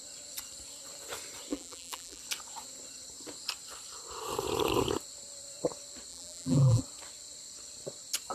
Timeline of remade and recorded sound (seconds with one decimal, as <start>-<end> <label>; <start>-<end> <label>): 0.0-1.5 recorded; 1.5-2.2 remade; 2.2-6.1 recorded; 6.1-6.8 remade; 6.8-8.3 recorded